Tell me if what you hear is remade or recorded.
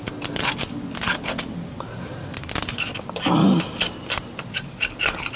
recorded